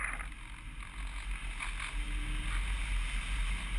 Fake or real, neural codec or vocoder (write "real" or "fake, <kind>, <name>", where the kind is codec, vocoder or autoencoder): real